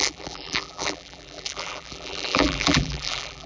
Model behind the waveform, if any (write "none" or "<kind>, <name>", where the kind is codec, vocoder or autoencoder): vocoder, BigVGAN v2